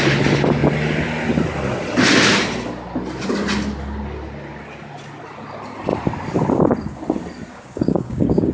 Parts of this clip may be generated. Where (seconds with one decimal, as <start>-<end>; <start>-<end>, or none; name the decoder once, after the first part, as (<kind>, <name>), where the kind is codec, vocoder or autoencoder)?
7.5-8.5 (codec, DAC)